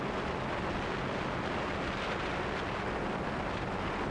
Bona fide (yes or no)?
yes